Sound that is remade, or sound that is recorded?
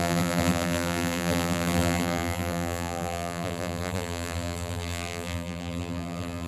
remade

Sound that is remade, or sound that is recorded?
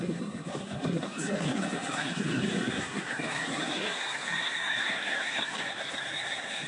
remade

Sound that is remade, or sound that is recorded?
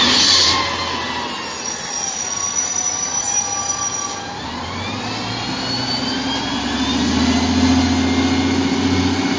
recorded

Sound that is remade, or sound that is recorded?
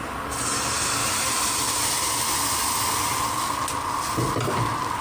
recorded